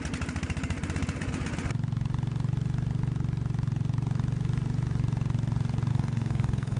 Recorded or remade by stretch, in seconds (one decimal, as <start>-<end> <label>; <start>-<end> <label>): 0.0-5.9 recorded; 5.9-6.8 remade